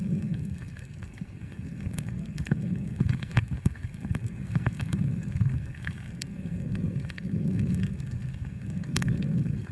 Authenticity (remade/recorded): remade